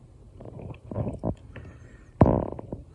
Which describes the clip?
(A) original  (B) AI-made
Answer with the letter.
B